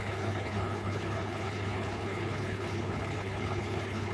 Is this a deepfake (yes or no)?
yes